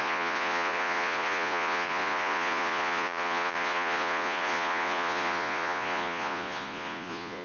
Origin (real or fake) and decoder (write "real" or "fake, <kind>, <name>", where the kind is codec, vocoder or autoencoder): fake, vocoder, Vocos